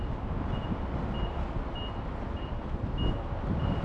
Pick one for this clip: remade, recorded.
recorded